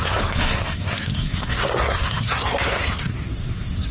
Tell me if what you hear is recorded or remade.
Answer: remade